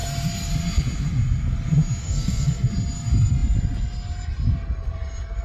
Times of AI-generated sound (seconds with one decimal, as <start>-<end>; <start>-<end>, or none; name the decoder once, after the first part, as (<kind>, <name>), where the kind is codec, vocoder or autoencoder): 2.0-2.7 (codec, SNAC)